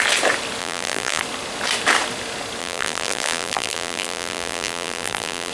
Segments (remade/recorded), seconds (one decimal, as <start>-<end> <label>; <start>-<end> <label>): 0.0-0.6 recorded; 0.6-1.2 remade; 1.2-2.6 recorded; 2.6-5.5 remade